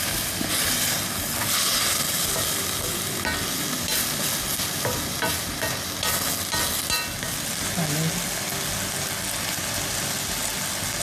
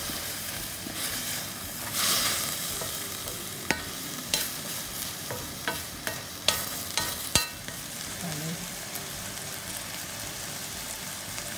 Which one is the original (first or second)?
first